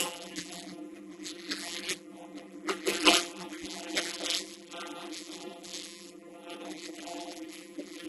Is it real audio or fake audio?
fake